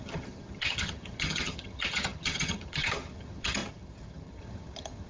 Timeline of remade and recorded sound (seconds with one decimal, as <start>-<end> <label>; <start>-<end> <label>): 0.0-5.1 remade